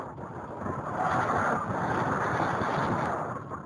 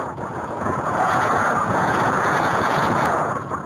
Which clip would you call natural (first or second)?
first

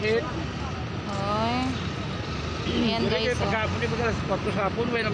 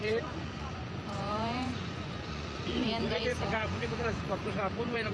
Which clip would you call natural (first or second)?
first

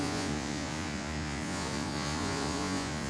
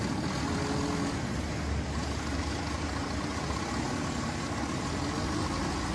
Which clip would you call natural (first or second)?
second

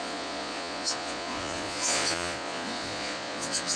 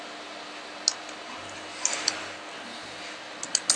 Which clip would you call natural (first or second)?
second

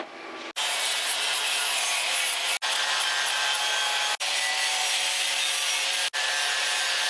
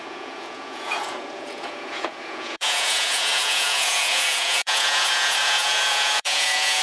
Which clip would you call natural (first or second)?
first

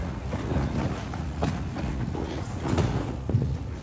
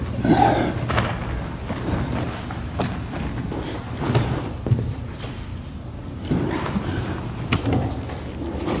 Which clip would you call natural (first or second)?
second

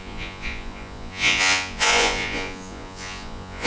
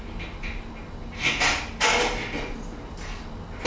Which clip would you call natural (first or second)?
second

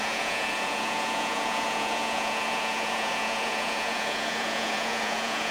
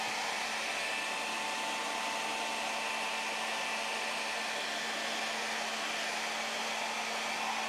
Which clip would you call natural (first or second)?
second